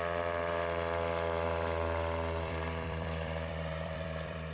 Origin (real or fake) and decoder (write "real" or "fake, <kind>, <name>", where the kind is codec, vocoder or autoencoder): fake, vocoder, BigVGAN v2